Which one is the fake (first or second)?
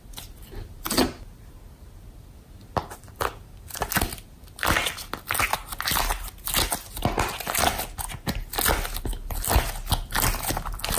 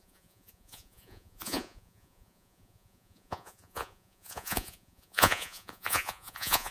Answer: second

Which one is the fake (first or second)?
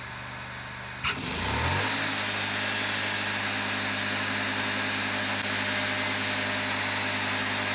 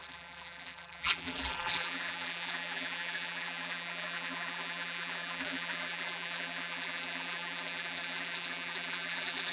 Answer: second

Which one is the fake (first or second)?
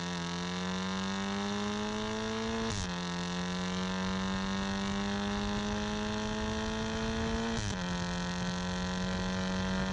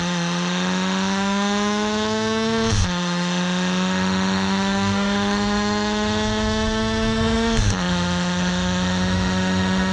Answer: second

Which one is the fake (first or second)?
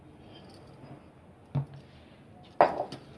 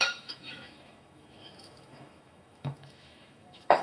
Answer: second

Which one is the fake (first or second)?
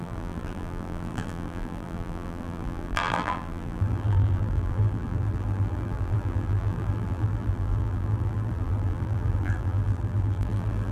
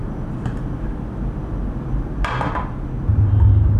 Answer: first